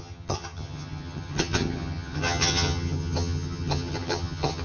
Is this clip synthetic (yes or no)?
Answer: yes